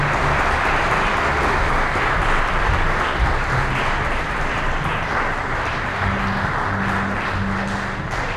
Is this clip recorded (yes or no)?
yes